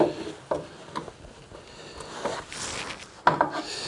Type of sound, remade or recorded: recorded